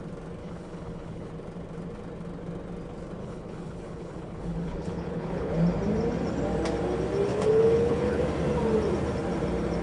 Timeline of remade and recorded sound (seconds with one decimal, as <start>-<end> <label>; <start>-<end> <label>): 0.0-0.4 recorded; 0.4-1.3 remade; 1.3-3.2 recorded; 3.2-5.5 remade; 5.5-7.3 recorded; 7.3-8.2 remade; 8.2-9.8 recorded

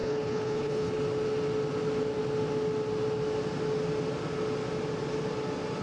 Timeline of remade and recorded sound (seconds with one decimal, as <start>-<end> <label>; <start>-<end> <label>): 0.0-0.9 remade; 0.9-5.8 recorded

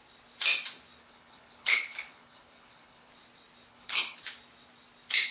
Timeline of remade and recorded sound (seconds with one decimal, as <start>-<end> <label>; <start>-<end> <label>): 0.0-1.0 recorded; 1.0-3.1 remade; 3.1-3.7 recorded; 3.7-4.2 remade; 4.2-5.3 recorded

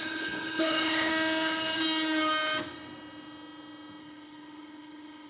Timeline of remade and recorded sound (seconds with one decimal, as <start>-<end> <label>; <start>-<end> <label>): 0.0-1.1 remade; 1.1-4.0 recorded; 4.0-5.3 remade

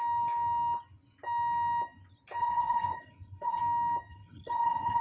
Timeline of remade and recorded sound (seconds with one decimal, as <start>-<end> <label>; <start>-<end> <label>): 0.0-2.4 recorded; 2.4-3.6 remade; 3.6-4.1 recorded; 4.1-5.0 remade

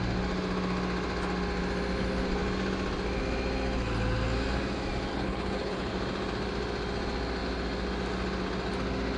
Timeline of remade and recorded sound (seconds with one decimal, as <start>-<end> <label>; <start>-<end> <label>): 0.0-5.1 recorded; 5.1-5.9 remade; 5.9-9.2 recorded